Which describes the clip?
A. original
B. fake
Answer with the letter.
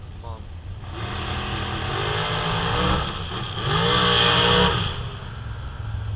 A